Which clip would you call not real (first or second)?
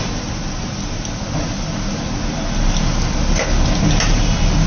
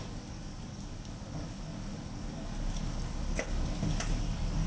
second